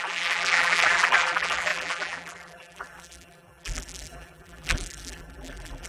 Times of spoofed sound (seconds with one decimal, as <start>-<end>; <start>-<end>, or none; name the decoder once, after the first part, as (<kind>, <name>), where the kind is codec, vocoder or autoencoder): 0.0-5.9 (vocoder, BigVGAN v2)